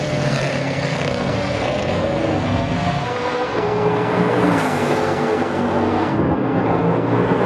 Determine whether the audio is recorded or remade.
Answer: remade